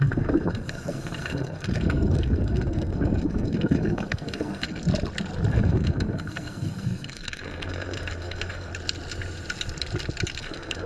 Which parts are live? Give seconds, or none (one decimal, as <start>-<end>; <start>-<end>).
4.8-5.5; 8.7-10.4